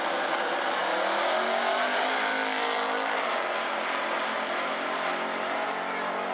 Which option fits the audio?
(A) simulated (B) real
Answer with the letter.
B